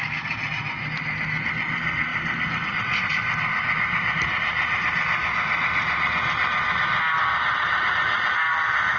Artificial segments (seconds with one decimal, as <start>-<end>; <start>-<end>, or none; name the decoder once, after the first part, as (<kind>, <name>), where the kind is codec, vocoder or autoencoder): none

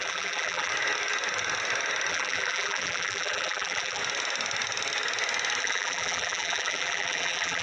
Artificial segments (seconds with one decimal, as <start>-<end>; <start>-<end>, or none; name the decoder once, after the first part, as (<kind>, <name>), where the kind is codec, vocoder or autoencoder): 0.0-0.7 (vocoder, BigVGAN v2); 2.1-4.0; 5.6-7.6

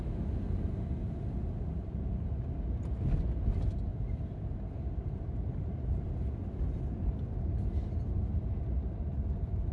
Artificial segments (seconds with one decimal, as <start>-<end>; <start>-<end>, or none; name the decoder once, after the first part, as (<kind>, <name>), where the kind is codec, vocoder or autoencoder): 3.9-7.3 (vocoder, BigVGAN v2)

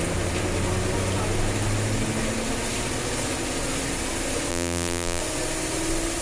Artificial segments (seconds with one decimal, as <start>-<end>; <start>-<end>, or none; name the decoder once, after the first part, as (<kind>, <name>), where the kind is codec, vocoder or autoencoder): 4.5-5.2 (vocoder, BigVGAN v2)

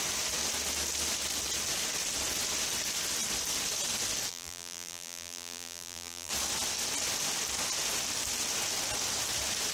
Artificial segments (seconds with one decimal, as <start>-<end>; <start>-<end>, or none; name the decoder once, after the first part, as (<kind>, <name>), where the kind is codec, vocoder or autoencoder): 4.3-6.3 (vocoder, BigVGAN v2)

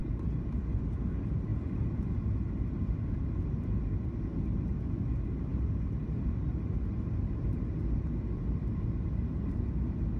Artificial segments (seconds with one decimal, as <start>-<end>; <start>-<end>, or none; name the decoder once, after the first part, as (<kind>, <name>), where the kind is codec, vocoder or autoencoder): 0.0-0.8 (vocoder, BigVGAN v2); 1.5-2.1

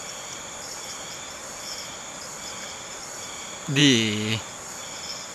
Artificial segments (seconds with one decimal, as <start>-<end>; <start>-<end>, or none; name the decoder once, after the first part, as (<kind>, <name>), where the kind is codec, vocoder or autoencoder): none

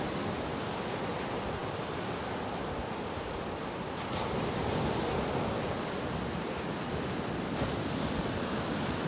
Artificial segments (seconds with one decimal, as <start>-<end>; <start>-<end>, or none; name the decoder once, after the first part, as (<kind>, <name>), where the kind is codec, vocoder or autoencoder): 0.0-9.1 (vocoder, BigVGAN v2)